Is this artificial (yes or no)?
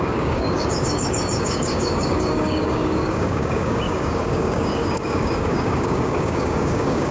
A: yes